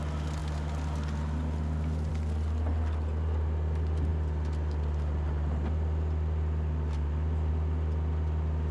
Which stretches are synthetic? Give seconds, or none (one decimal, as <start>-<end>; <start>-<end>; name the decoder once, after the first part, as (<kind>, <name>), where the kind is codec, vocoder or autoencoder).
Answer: none